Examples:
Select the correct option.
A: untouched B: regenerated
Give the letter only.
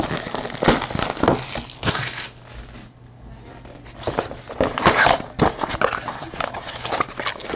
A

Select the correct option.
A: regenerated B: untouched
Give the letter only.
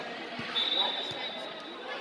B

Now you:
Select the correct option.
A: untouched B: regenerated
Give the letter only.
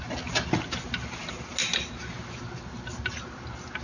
A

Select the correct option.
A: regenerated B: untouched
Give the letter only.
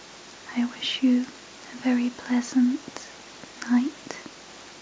B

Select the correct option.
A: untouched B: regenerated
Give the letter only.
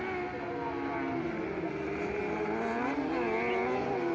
A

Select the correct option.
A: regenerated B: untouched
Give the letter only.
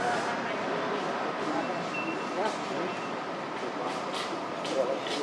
B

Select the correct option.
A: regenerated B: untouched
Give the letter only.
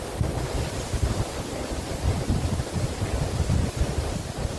B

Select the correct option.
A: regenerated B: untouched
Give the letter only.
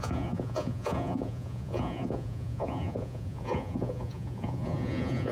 A